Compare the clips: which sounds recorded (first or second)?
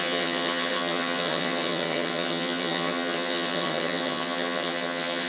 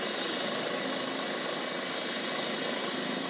second